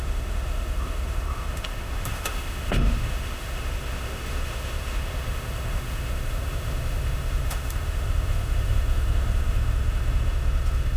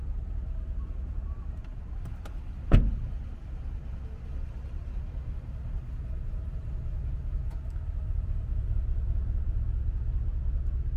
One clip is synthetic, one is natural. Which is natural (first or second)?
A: second